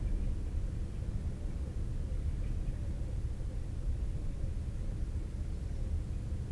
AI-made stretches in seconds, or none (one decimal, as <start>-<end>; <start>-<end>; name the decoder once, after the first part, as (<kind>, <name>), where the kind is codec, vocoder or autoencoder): 0.0-0.8 (vocoder, BigVGAN v2); 1.7-4.5

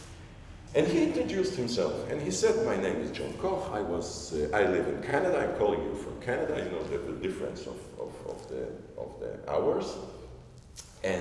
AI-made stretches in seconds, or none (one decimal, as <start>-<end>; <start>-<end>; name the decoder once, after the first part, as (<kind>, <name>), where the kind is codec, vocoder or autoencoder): 5.1-5.7 (vocoder, BigVGAN v2); 7.0-8.8

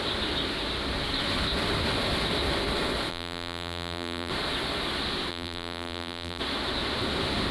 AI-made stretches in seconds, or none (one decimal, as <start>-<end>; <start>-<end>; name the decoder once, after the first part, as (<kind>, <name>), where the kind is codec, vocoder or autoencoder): 3.1-4.3 (vocoder, BigVGAN v2); 5.3-6.4

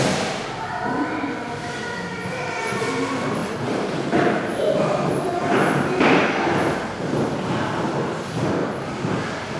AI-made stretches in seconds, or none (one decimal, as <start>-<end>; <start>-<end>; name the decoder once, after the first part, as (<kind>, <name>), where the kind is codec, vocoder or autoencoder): 3.4-5.9 (vocoder, BigVGAN v2); 8.6-9.2

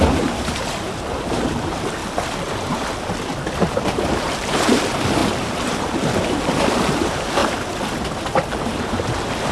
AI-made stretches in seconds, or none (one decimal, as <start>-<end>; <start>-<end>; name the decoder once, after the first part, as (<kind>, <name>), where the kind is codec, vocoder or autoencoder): 0.0-2.0 (vocoder, BigVGAN v2); 3.6-7.4; 8.6-9.5